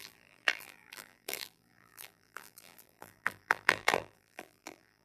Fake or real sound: fake